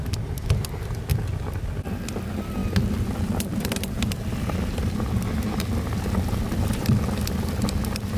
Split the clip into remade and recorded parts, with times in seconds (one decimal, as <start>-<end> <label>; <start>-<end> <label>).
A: 0.0-2.6 recorded; 2.6-7.0 remade; 7.0-8.2 recorded